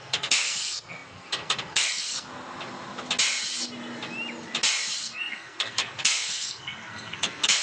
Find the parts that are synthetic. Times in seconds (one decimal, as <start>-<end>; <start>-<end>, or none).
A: 0.0-2.3; 5.0-7.6